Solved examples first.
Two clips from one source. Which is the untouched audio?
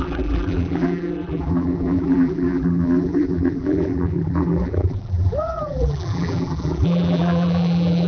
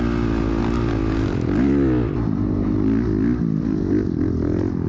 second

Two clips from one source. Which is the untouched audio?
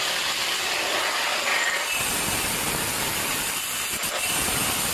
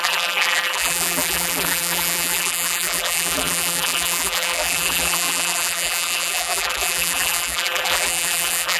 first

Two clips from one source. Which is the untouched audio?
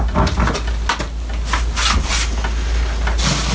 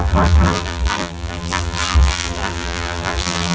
first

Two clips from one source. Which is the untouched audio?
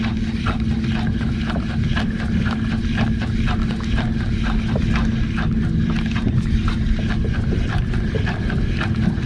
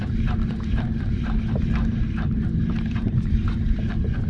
first